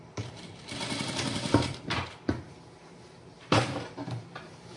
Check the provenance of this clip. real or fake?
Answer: fake